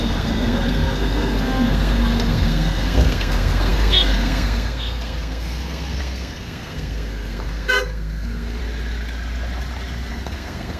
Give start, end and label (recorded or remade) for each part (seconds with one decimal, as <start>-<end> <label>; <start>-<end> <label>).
0.0-8.6 remade; 8.6-10.1 recorded; 10.1-10.8 remade